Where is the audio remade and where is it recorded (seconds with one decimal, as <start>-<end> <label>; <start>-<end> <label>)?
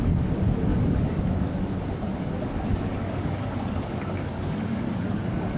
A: 0.0-0.7 recorded; 0.7-1.2 remade; 1.2-2.1 recorded; 2.1-5.6 remade